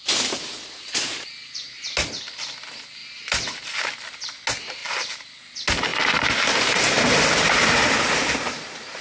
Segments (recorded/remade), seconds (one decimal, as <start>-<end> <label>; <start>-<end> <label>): 0.0-3.0 recorded; 3.0-3.8 remade; 3.8-5.9 recorded; 5.9-7.3 remade; 7.3-9.0 recorded